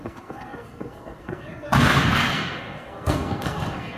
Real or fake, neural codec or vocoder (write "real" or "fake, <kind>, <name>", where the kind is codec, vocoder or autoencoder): fake, codec, SNAC